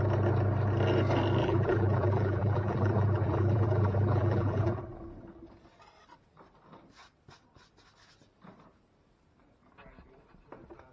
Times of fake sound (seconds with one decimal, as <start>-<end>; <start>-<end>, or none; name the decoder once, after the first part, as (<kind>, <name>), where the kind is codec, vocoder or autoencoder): 1.4-4.8 (vocoder, BigVGAN v2)

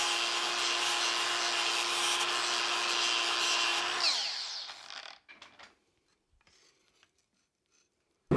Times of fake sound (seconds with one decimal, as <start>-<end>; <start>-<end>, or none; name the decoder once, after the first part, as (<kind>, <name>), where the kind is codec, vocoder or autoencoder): none

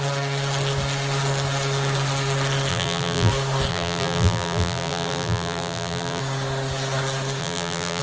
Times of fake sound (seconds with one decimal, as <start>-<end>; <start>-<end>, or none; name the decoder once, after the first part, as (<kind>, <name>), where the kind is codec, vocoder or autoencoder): 2.7-3.3 (vocoder, BigVGAN v2); 3.7-6.2; 7.4-8.0

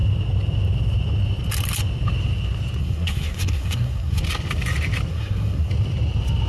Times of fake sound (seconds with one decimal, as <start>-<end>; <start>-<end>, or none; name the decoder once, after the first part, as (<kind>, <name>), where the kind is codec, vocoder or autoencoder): 2.8-4.2 (codec, SNAC); 5.1-5.7

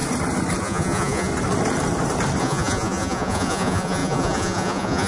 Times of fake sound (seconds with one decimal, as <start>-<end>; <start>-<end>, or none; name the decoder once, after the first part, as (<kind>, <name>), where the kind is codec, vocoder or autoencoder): 0.6-1.3 (vocoder, Vocos); 2.4-5.1

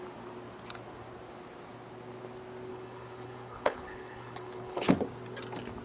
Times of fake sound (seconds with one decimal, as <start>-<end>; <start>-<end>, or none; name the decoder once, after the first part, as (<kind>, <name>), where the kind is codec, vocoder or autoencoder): 2.7-4.9 (codec, HILCodec)

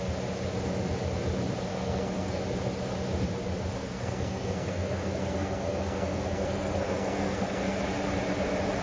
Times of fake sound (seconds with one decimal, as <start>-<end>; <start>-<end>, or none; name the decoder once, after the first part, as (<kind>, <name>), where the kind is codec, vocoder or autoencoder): 1.7-2.4 (codec, SNAC); 3.8-7.8